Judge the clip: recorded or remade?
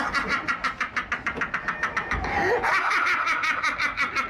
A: recorded